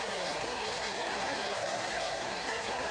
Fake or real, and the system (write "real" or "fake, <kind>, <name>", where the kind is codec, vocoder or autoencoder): fake, codec, SNAC